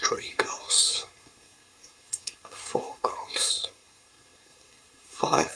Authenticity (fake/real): fake